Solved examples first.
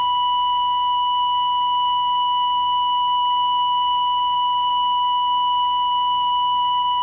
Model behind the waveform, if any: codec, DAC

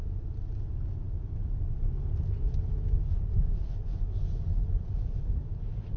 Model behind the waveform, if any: none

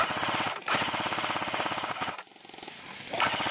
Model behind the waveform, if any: none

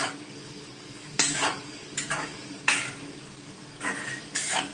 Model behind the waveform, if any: codec, DAC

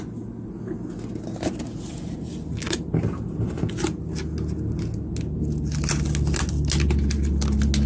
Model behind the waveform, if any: none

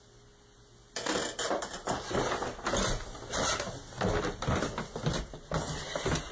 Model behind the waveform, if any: none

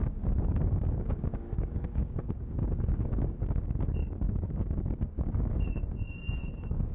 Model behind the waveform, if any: codec, DAC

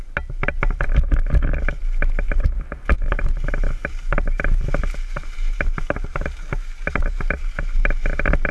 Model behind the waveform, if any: none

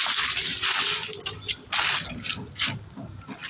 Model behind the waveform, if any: none